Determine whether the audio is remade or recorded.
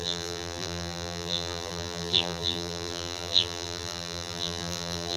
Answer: remade